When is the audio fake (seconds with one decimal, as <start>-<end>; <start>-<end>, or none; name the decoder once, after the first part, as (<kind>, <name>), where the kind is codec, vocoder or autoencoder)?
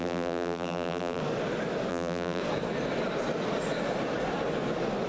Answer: 0.0-1.2 (vocoder, BigVGAN v2); 1.9-2.4